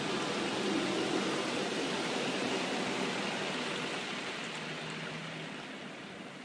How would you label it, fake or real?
real